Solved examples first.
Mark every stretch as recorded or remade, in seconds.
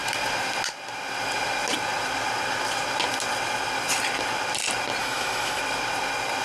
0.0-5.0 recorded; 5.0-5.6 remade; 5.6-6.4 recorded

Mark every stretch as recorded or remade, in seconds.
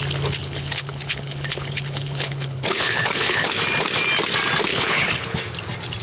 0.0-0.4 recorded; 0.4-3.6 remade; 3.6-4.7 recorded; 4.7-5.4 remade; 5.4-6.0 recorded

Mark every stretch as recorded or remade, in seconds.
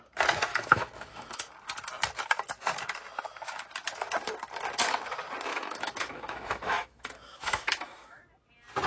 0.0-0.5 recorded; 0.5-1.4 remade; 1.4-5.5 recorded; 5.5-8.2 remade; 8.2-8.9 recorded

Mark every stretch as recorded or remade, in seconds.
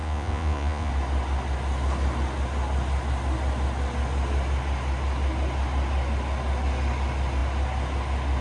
0.0-0.9 remade; 0.9-8.4 recorded